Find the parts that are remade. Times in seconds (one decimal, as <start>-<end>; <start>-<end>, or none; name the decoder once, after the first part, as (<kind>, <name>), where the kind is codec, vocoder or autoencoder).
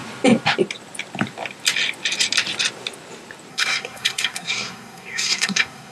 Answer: 3.5-5.9 (codec, SNAC)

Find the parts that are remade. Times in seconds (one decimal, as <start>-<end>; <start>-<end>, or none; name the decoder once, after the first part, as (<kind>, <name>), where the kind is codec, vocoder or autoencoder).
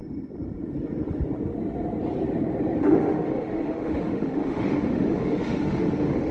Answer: 2.8-6.3 (autoencoder, DAC-VAE)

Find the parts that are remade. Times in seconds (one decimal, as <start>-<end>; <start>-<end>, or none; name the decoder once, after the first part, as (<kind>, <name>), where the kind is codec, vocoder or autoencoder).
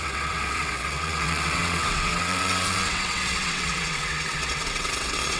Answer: 0.0-5.4 (vocoder, WaveNeXt)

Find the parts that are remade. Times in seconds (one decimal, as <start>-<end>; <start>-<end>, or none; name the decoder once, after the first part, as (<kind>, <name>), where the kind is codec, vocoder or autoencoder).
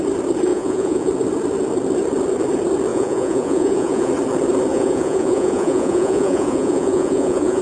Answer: 0.5-1.1 (vocoder, Vocos); 2.9-4.1; 4.7-7.6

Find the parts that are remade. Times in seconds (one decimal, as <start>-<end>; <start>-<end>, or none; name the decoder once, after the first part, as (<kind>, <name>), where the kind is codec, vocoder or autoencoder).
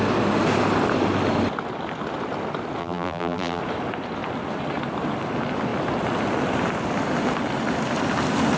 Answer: 2.8-3.6 (vocoder, BigVGAN v2)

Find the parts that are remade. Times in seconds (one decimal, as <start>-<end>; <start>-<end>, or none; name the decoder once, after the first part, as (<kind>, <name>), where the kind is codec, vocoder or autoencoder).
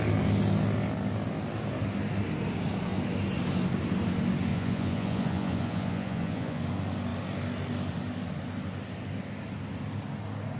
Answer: 4.5-6.6 (vocoder, Vocos)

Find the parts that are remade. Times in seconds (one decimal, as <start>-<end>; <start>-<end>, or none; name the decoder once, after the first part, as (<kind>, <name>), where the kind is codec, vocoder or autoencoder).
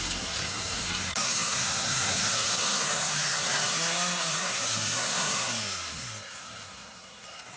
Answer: 0.0-7.6 (codec, SNAC)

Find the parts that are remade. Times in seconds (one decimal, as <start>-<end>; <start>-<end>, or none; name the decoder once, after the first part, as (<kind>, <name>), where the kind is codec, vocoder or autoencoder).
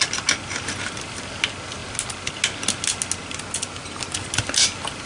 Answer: none